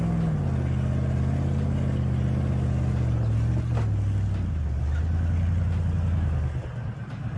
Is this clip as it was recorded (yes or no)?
yes